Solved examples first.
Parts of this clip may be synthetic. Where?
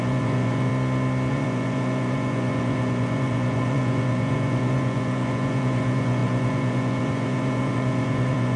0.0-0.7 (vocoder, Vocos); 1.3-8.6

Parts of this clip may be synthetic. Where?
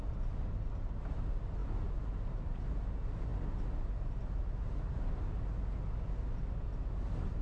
1.6-2.7 (vocoder, BigVGAN v2)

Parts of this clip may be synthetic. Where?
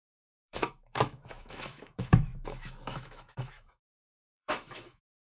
0.0-5.3 (autoencoder, DAC-VAE)